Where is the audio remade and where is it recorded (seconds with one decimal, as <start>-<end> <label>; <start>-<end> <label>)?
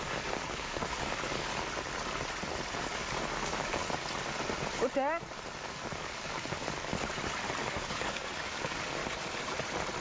0.0-1.5 remade; 1.5-2.8 recorded; 2.8-3.8 remade; 3.8-5.7 recorded; 5.7-6.9 remade; 6.9-7.7 recorded; 7.7-9.0 remade; 9.0-10.0 recorded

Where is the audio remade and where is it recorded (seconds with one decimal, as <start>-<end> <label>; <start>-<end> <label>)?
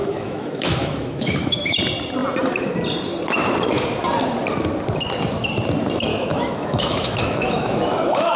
0.0-1.8 remade; 1.8-6.1 recorded; 6.1-8.4 remade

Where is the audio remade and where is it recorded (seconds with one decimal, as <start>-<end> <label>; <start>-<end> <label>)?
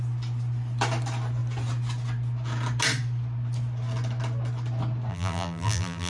0.0-5.1 recorded; 5.1-6.1 remade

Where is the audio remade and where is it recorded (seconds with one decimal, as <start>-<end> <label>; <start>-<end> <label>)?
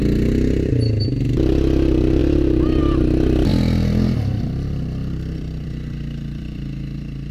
0.0-3.5 recorded; 3.5-7.3 remade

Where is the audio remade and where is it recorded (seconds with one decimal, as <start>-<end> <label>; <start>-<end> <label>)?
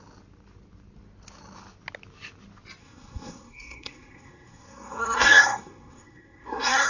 0.0-2.8 recorded; 2.8-6.9 remade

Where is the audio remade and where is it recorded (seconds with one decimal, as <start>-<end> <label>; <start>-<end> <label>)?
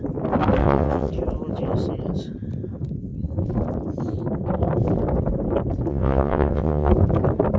0.0-0.6 recorded; 0.6-1.1 remade; 1.1-5.9 recorded; 5.9-6.9 remade; 6.9-7.6 recorded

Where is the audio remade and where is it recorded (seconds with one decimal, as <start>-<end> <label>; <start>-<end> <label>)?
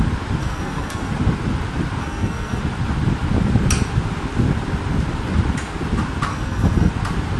0.0-0.4 recorded; 0.4-1.1 remade; 1.1-2.0 recorded; 2.0-2.6 remade; 2.6-6.3 recorded; 6.3-6.9 remade; 6.9-7.4 recorded